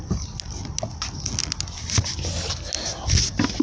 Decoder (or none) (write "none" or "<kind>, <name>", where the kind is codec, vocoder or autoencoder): none